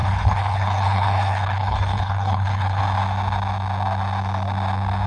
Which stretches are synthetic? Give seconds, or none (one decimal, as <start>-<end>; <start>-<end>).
0.0-2.8